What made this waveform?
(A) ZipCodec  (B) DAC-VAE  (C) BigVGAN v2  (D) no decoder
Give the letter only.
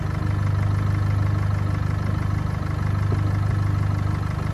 D